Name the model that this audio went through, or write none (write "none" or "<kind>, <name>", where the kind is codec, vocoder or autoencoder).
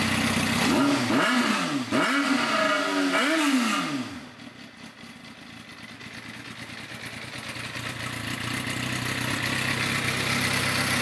none